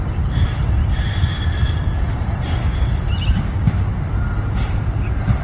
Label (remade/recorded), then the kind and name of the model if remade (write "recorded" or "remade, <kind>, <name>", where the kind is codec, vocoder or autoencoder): recorded